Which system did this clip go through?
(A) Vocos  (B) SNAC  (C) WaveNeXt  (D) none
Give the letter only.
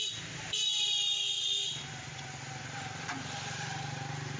D